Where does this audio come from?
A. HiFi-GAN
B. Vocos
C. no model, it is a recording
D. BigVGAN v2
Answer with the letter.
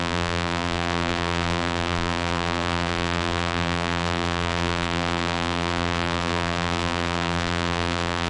D